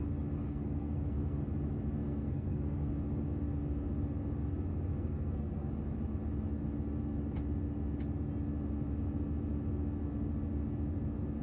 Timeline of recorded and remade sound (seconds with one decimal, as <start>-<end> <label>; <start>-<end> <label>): 0.0-0.4 recorded; 0.4-1.4 remade; 1.4-2.0 recorded; 2.0-2.9 remade; 2.9-4.9 recorded; 4.9-5.7 remade; 5.7-11.4 recorded